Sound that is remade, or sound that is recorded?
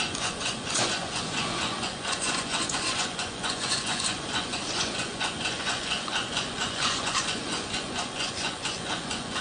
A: remade